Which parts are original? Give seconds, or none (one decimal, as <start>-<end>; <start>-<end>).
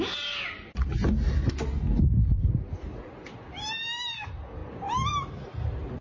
0.0-6.0